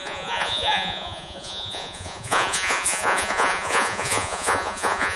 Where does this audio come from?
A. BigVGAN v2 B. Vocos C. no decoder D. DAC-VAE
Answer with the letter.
B